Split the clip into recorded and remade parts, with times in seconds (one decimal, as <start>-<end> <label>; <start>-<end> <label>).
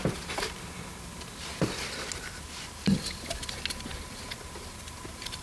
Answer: 0.0-5.4 recorded